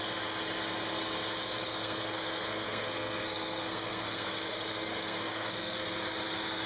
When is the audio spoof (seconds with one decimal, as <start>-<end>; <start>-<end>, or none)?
1.8-5.8